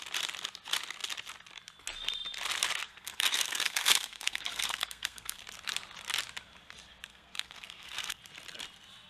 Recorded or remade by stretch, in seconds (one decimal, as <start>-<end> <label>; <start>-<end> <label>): 0.0-2.8 recorded; 2.8-5.4 remade; 5.4-7.1 recorded; 7.1-8.2 remade; 8.2-9.1 recorded